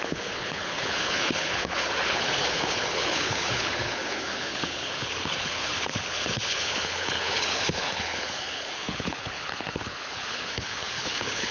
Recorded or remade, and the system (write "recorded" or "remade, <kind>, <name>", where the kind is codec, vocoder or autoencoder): remade, codec, HILCodec